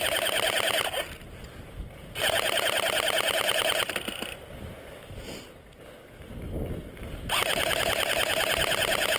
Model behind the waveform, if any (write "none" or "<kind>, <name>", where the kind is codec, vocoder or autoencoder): none